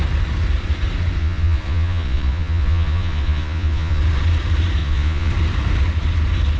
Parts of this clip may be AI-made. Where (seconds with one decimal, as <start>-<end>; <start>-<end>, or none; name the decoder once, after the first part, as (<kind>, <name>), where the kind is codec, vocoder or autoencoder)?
1.2-4.0 (vocoder, Vocos); 4.8-5.3